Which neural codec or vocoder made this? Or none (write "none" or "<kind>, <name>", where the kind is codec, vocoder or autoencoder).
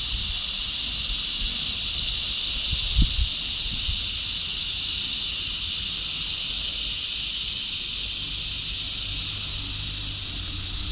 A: none